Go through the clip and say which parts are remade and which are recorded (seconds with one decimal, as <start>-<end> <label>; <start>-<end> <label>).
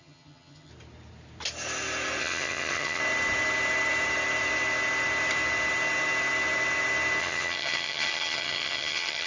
0.0-0.7 remade; 0.7-2.2 recorded; 2.2-3.0 remade; 3.0-7.2 recorded; 7.2-9.3 remade